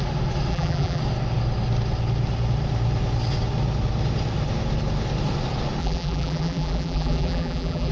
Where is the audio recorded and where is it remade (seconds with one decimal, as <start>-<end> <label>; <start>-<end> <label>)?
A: 0.0-0.5 recorded; 0.5-1.0 remade; 1.0-5.8 recorded; 5.8-7.9 remade